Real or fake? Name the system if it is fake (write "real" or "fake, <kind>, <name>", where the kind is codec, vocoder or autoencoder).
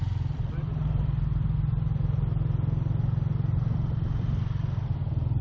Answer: real